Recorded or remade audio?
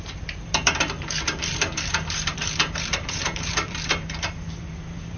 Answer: remade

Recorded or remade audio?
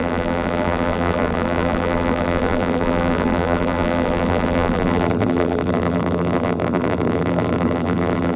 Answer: remade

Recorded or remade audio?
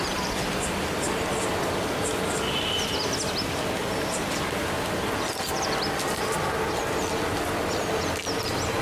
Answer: recorded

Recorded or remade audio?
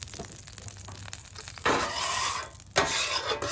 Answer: recorded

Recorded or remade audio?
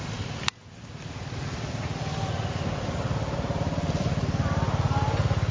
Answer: remade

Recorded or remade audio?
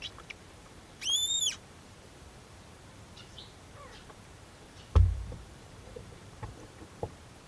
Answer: remade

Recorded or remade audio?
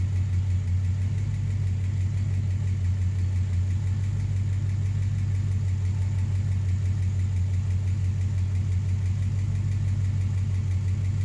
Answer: recorded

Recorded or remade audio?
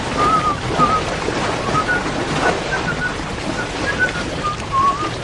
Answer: remade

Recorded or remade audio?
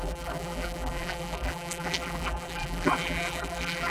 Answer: remade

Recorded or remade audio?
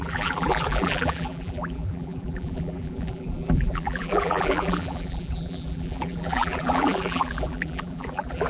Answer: remade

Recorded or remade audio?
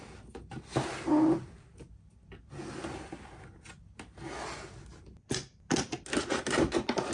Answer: recorded